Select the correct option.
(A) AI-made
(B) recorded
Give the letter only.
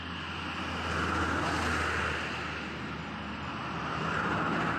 B